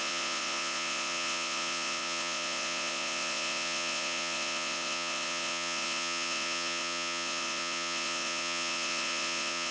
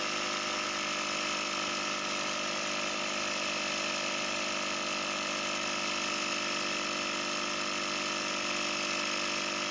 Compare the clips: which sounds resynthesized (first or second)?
first